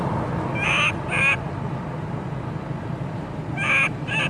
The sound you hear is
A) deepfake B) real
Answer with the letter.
B